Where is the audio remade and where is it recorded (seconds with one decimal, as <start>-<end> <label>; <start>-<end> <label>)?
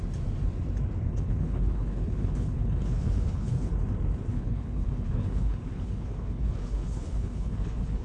0.0-1.1 recorded; 1.1-3.7 remade; 3.7-4.3 recorded; 4.3-8.0 remade